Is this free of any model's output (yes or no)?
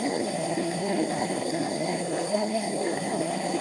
no